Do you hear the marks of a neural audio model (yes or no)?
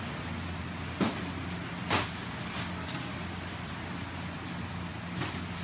no